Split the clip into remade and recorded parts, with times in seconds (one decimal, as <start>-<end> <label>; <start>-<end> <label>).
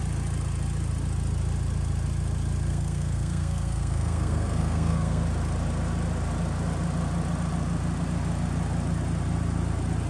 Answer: 0.0-2.7 recorded; 2.7-5.2 remade; 5.2-10.1 recorded